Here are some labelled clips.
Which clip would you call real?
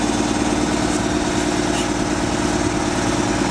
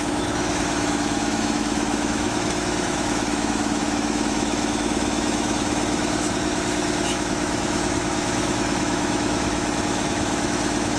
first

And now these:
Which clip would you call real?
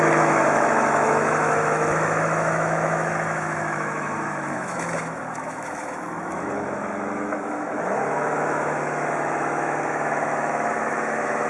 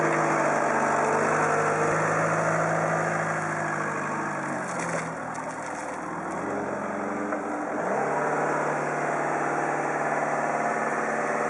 second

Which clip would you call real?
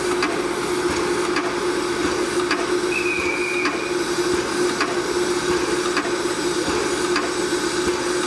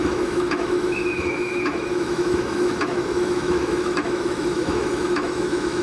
first